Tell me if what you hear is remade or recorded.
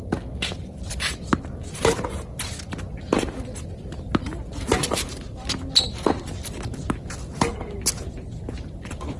recorded